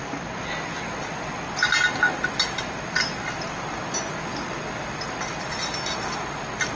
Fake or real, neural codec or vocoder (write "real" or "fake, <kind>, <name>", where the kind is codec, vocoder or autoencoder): real